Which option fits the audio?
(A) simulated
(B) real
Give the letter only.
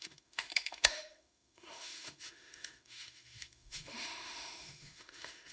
A